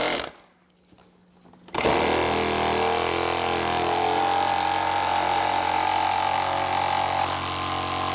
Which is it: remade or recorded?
recorded